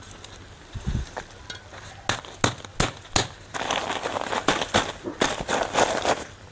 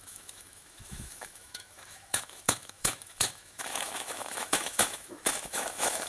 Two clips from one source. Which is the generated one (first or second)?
second